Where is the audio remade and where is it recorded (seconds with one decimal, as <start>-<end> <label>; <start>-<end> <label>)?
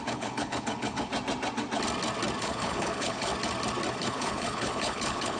0.0-1.1 remade; 1.1-2.4 recorded; 2.4-3.3 remade; 3.3-3.9 recorded; 3.9-5.4 remade